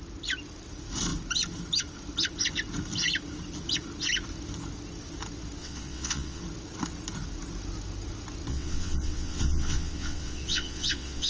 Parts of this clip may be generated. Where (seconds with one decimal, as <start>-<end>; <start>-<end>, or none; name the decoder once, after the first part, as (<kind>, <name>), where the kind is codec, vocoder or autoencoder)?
5.6-6.4 (vocoder, WaveNeXt); 8.5-11.3